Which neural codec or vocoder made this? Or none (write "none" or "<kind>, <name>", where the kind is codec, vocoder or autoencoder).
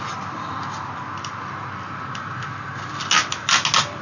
none